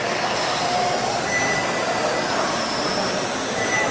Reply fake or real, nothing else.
real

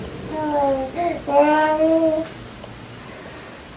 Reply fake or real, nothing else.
real